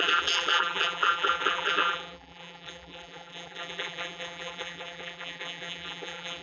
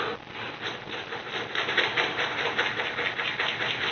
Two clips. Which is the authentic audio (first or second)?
second